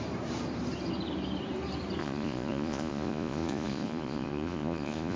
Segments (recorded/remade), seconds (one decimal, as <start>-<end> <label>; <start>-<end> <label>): 0.0-2.0 recorded; 2.0-5.2 remade